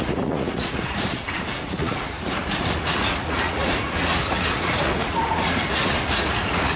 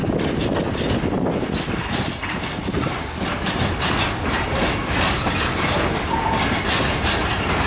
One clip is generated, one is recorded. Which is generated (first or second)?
first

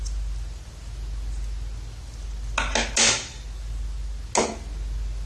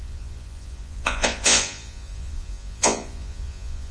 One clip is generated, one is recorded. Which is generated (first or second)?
second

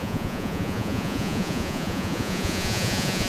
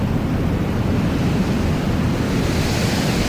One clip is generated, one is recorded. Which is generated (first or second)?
first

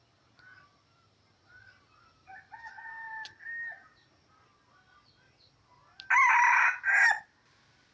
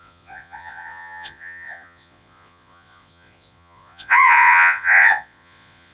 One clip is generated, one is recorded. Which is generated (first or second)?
second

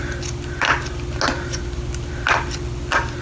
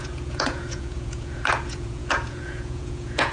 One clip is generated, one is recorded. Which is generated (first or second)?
second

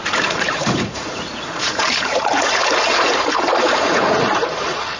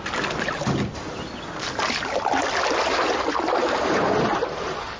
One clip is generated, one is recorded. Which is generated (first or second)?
first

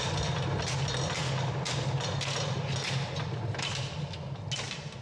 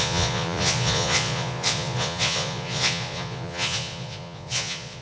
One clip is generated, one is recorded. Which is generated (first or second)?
second